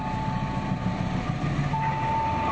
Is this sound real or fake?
real